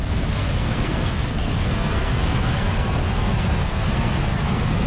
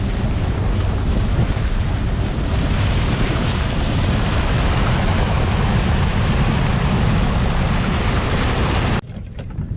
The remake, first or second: first